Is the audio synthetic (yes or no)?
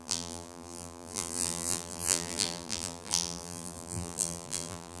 yes